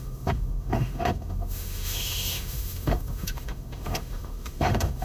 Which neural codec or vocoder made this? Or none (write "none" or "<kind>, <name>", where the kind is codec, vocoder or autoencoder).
autoencoder, DAC-VAE